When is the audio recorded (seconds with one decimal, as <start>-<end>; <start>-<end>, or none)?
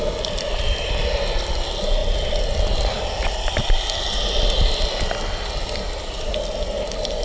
0.0-7.2